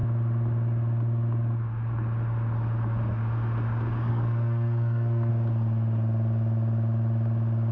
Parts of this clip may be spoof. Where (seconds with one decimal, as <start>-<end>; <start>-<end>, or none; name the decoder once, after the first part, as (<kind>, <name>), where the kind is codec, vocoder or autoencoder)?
4.1-5.3 (codec, SNAC)